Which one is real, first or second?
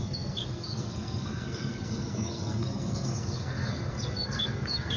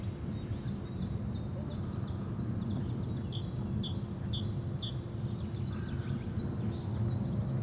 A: second